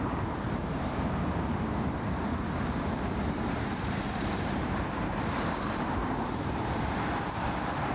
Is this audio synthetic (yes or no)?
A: yes